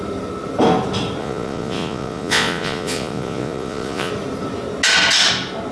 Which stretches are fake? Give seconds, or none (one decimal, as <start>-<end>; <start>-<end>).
1.2-4.1